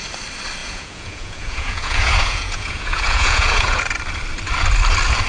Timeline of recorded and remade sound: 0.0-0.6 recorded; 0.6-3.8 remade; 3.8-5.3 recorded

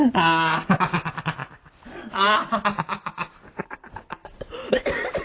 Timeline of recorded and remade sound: 0.0-5.2 recorded

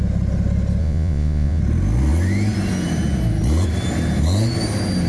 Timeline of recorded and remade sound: 0.0-0.8 recorded; 0.8-1.6 remade; 1.6-5.1 recorded

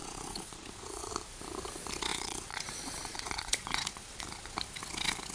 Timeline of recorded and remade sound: 0.0-1.1 remade; 1.1-2.1 recorded; 2.1-4.2 remade; 4.2-5.3 recorded